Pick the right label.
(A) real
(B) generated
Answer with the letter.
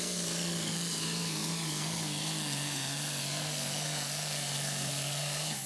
B